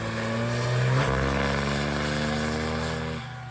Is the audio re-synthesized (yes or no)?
no